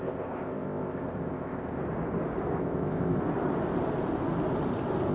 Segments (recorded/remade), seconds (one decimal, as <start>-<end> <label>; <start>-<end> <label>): 0.0-1.8 remade; 1.8-2.6 recorded; 2.6-3.2 remade; 3.2-5.1 recorded